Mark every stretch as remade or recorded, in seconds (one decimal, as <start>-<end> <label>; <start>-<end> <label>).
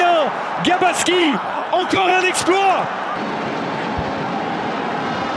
0.0-1.2 recorded; 1.2-2.1 remade; 2.1-5.4 recorded